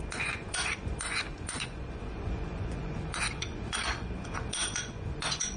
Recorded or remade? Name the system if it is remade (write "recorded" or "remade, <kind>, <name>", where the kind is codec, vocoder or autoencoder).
remade, vocoder, Vocos